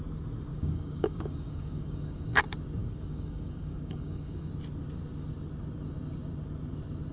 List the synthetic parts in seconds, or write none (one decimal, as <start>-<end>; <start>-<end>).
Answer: 0.5-2.4; 2.8-4.5